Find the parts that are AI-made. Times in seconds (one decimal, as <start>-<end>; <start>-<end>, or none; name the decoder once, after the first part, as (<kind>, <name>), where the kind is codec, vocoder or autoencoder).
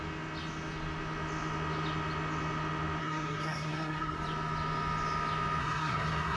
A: 3.0-4.2 (codec, SNAC); 5.6-6.4